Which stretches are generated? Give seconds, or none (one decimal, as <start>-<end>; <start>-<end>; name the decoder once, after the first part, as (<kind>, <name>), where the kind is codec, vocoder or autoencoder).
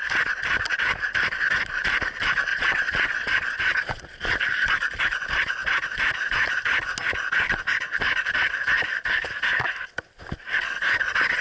2.5-4.3 (vocoder, Vocos)